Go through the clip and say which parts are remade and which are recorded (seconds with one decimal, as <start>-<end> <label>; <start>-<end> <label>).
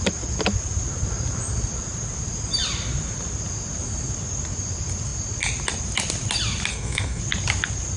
0.0-6.7 recorded; 6.7-7.2 remade; 7.2-8.0 recorded